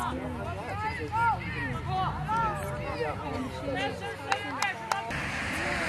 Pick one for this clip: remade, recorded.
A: recorded